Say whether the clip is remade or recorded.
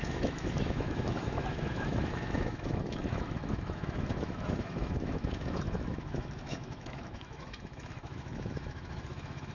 remade